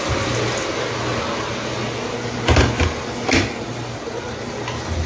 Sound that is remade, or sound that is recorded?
recorded